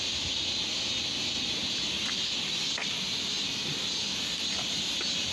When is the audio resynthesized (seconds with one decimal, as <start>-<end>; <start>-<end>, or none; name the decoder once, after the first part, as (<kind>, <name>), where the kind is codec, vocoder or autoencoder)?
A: none